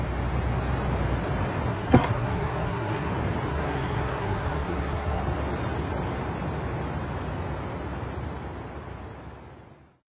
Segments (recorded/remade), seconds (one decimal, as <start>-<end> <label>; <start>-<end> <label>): 0.0-1.7 recorded; 1.7-3.1 remade; 3.1-3.5 recorded; 3.5-5.2 remade; 5.2-10.1 recorded